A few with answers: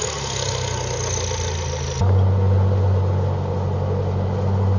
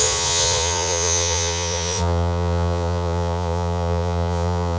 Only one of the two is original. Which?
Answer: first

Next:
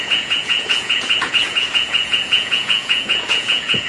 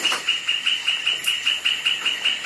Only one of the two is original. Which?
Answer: second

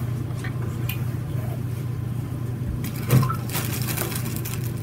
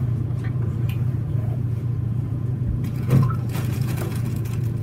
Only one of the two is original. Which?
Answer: first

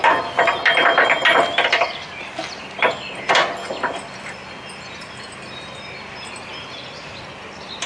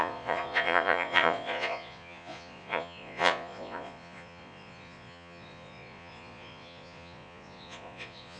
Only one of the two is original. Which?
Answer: first